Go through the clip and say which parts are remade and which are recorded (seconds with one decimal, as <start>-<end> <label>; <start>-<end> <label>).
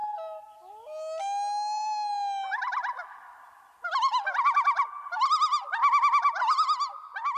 0.0-7.4 recorded